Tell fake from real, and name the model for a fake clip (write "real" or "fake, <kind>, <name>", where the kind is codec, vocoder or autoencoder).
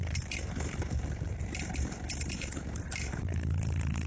fake, vocoder, BigVGAN v2